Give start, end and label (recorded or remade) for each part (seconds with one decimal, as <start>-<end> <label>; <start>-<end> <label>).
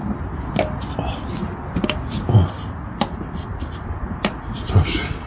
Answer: 0.0-5.3 recorded